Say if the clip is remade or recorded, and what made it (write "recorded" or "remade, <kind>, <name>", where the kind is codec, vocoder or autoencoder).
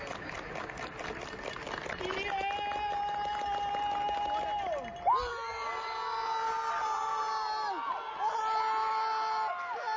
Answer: recorded